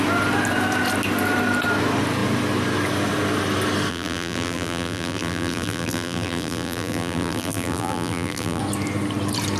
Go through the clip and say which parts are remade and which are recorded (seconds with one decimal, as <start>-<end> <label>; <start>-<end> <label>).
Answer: 0.0-3.9 recorded; 3.9-8.6 remade; 8.6-9.6 recorded